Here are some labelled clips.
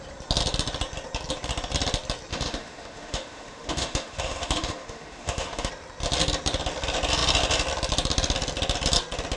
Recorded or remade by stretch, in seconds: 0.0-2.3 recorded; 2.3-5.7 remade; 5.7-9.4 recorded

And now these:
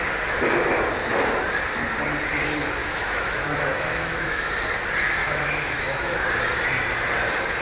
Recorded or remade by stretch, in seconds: 0.0-2.8 recorded; 2.8-4.5 remade; 4.5-5.2 recorded; 5.2-6.2 remade; 6.2-7.6 recorded